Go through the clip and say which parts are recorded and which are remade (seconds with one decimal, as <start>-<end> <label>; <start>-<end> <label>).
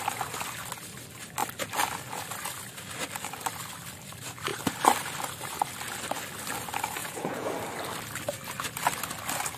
0.0-7.0 recorded; 7.0-7.5 remade; 7.5-9.6 recorded